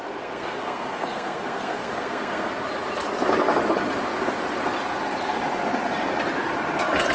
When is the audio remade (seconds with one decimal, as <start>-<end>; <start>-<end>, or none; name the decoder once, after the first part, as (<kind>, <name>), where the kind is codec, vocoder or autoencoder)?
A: 0.0-2.5 (codec, SNAC)